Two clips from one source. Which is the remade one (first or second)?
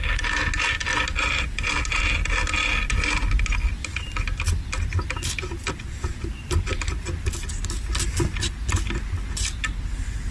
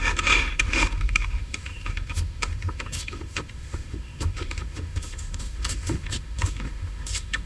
second